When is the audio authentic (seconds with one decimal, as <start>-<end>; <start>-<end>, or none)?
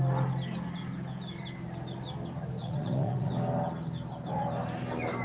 0.0-2.6; 3.3-5.2